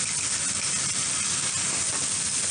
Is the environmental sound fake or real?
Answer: real